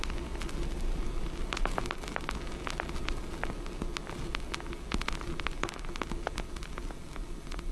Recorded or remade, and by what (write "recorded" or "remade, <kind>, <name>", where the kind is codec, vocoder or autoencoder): recorded